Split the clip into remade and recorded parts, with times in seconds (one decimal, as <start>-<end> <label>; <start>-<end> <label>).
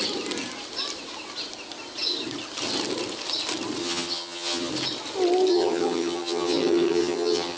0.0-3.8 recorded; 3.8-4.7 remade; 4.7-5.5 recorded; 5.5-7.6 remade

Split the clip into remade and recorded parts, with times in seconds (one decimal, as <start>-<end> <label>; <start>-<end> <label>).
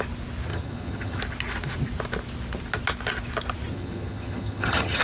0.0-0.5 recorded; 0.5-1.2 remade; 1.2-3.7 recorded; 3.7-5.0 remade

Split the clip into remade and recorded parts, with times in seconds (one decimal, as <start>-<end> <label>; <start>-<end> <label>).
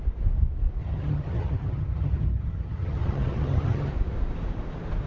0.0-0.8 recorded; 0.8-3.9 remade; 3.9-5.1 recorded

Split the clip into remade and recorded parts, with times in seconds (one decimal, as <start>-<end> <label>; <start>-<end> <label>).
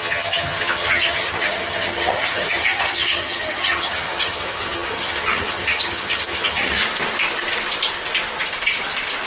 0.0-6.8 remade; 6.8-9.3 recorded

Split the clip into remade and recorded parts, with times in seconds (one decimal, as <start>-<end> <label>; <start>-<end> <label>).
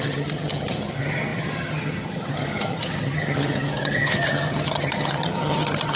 0.0-6.0 remade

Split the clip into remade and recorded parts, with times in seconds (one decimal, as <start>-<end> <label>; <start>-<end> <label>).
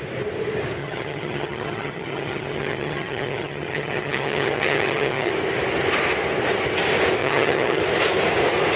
0.0-0.8 recorded; 0.8-5.3 remade; 5.3-7.2 recorded; 7.2-7.8 remade; 7.8-8.8 recorded